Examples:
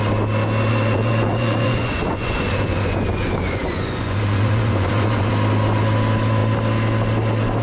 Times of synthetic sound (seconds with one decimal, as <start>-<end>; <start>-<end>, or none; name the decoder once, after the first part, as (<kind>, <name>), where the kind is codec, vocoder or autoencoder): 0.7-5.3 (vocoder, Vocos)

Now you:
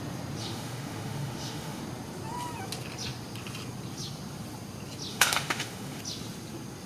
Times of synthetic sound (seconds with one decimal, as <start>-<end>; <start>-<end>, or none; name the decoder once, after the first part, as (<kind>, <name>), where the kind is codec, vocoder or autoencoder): 0.4-1.8 (autoencoder, DAC-VAE); 5.1-6.0

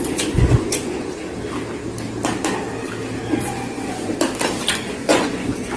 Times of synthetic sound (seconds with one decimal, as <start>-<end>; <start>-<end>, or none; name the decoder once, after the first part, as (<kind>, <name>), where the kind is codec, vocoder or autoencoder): 0.0-1.2 (vocoder, Vocos); 3.4-4.1; 4.7-5.8